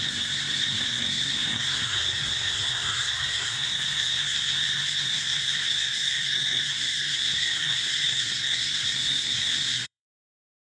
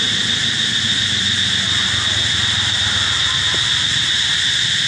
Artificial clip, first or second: first